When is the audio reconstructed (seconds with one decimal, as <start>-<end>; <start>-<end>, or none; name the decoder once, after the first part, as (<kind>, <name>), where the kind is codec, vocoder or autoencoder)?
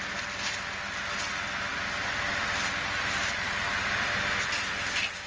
none